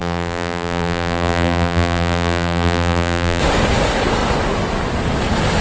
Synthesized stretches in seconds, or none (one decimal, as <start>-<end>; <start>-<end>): 0.0-3.4